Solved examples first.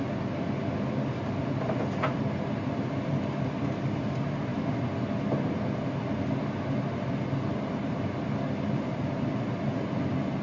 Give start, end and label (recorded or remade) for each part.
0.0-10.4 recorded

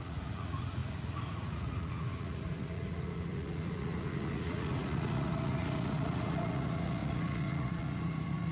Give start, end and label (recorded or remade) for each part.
0.0-8.5 remade

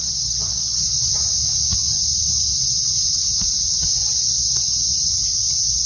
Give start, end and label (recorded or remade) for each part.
0.0-1.1 remade; 1.1-2.5 recorded; 2.5-3.1 remade; 3.1-4.0 recorded; 4.0-5.1 remade; 5.1-5.9 recorded